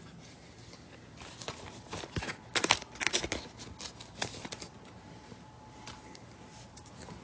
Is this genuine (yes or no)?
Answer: yes